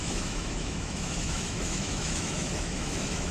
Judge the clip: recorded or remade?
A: remade